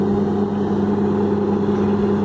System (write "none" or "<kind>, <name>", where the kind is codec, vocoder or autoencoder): none